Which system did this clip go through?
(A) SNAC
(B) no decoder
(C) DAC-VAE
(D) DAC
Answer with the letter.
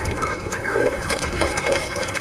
A